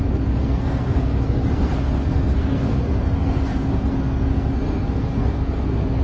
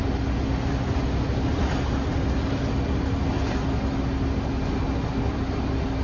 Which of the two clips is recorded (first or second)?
second